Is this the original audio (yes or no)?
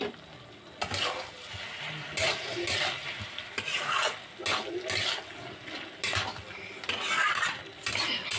yes